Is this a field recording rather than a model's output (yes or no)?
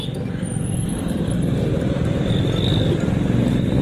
no